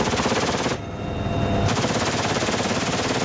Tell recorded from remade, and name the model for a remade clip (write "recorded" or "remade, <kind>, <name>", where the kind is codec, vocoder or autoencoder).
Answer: recorded